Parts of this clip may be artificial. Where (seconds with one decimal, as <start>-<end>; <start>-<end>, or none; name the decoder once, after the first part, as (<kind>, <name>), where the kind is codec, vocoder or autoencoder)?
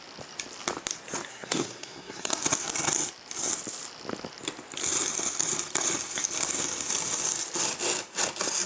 1.3-2.3 (codec, SNAC)